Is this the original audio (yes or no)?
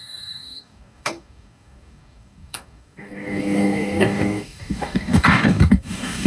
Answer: no